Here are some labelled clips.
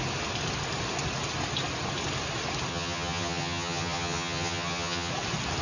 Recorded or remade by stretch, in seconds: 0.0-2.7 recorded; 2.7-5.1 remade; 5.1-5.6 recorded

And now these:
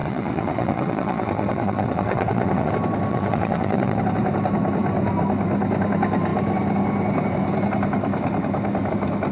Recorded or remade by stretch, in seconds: 0.0-2.7 remade; 2.7-3.1 recorded; 3.1-4.0 remade; 4.0-9.3 recorded

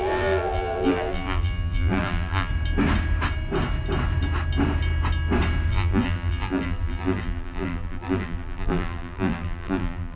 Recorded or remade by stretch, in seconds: 0.0-2.5 remade; 2.5-5.7 recorded; 5.7-10.2 remade